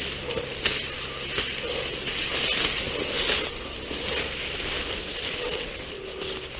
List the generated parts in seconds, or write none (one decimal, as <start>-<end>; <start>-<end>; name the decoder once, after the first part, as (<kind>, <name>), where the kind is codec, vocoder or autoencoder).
5.3-5.8 (vocoder, WaveNeXt)